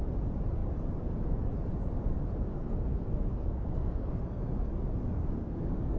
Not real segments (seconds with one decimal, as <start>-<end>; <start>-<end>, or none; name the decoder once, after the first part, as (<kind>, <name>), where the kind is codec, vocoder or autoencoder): 2.5-4.7 (codec, SNAC); 5.4-6.0